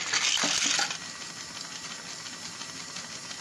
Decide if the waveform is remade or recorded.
recorded